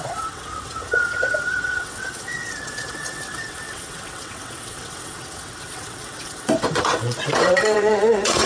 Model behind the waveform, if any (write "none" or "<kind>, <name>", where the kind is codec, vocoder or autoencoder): vocoder, WaveNeXt